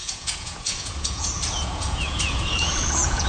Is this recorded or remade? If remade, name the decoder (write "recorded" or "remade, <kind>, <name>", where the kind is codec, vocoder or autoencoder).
remade, vocoder, Vocos